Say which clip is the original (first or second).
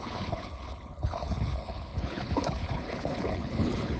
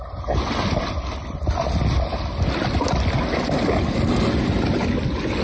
second